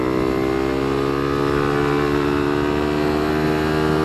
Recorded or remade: recorded